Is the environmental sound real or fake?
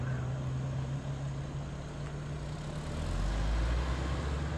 real